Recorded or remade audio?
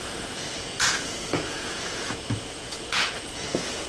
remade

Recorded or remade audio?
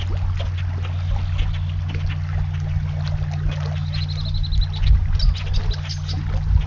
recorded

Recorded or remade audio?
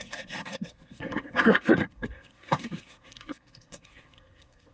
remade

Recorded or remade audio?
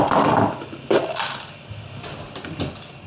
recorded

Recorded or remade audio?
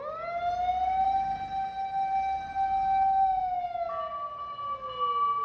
recorded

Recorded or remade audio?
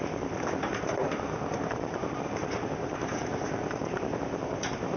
remade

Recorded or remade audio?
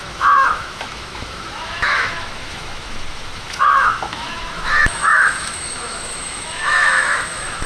remade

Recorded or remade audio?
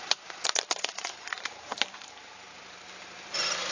remade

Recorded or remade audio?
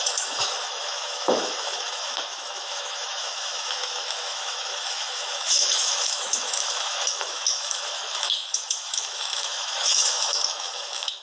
remade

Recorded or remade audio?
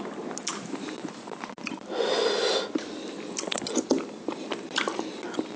recorded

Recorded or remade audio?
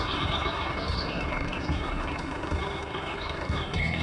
remade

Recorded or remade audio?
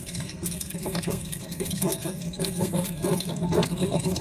remade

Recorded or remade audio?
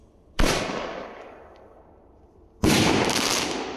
recorded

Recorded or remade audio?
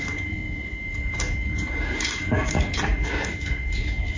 remade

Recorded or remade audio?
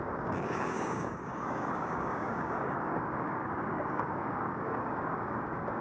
remade